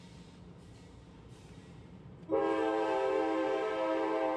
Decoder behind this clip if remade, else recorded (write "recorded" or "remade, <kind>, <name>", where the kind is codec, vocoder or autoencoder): remade, vocoder, BigVGAN v2